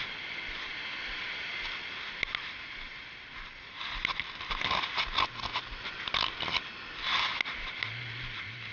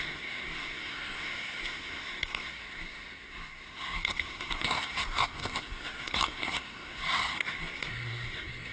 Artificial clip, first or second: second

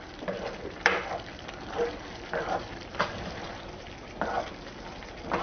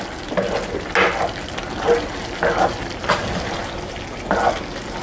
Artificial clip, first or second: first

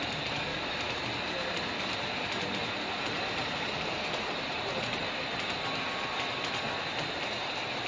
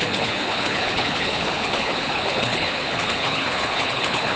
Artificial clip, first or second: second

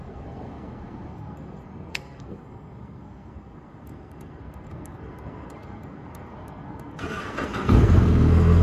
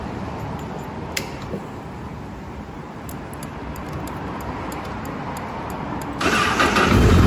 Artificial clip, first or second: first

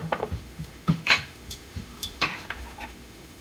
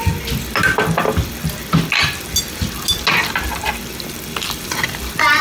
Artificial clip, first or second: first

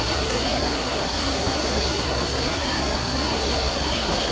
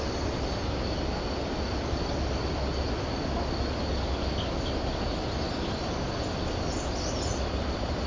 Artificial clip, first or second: first